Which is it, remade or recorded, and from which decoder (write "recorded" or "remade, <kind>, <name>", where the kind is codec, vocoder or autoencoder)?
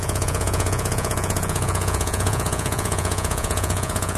remade, vocoder, Vocos